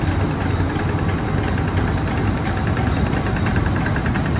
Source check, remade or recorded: recorded